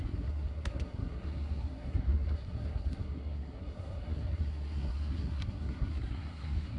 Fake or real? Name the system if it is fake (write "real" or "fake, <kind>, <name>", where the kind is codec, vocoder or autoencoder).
fake, codec, SNAC